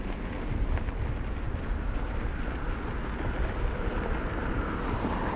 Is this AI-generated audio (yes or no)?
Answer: no